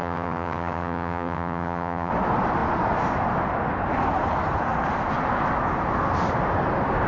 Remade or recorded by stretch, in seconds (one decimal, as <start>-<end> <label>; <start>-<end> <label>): 0.0-2.1 remade; 2.1-7.1 recorded